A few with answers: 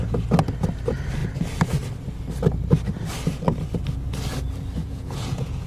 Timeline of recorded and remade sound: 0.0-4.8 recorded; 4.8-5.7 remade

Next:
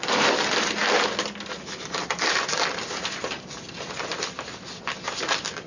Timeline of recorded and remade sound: 0.0-5.7 recorded

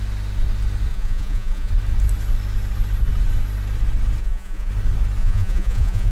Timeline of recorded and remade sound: 0.0-0.9 recorded; 0.9-1.7 remade; 1.7-4.2 recorded; 4.2-4.7 remade; 4.7-5.2 recorded; 5.2-6.1 remade